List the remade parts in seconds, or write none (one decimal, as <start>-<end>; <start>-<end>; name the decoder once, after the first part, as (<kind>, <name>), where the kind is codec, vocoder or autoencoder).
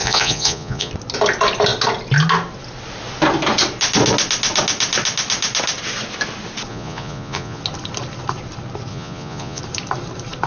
0.0-0.9 (vocoder, Vocos); 6.7-7.6; 8.9-9.6